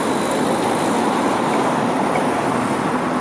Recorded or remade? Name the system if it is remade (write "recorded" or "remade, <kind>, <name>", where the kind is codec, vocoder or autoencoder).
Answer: remade, vocoder, BigVGAN v2